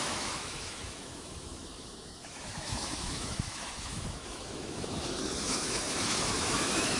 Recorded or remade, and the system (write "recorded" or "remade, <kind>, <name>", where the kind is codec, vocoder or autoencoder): remade, autoencoder, DAC-VAE